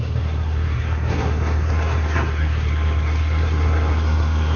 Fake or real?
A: fake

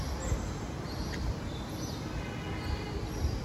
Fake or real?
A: real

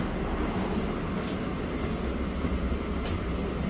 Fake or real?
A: real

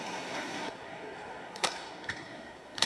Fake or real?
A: fake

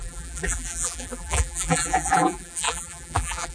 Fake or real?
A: fake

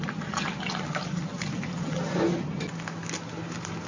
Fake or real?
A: real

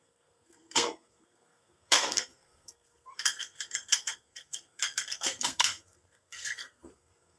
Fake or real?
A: fake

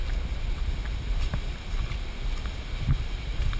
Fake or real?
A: real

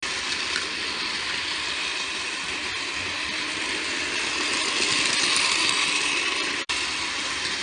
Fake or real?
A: real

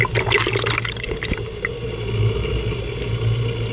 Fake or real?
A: real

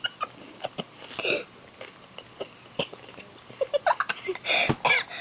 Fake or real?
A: real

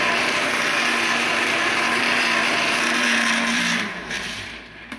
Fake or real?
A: fake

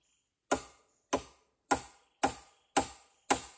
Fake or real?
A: real